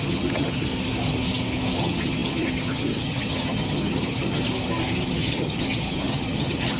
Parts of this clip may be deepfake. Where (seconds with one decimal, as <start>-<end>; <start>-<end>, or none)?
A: 0.0-0.7; 1.8-4.4; 5.1-6.8